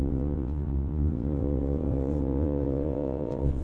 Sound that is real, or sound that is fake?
fake